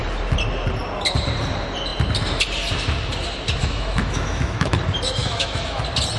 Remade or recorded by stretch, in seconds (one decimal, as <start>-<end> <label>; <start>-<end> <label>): 0.0-3.6 recorded; 3.6-4.8 remade; 4.8-5.2 recorded; 5.2-5.8 remade; 5.8-6.2 recorded